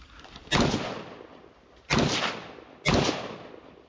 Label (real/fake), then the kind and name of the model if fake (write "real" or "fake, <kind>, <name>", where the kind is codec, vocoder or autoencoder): real